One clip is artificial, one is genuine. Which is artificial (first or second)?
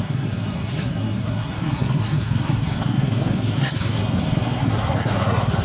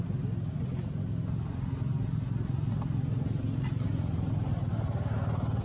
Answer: first